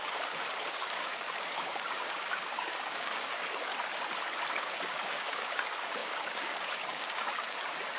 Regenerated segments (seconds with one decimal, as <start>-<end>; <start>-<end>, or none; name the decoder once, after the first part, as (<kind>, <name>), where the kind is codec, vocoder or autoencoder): 0.0-3.7 (codec, DAC); 4.5-8.0